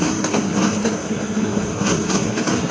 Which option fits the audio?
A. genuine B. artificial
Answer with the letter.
B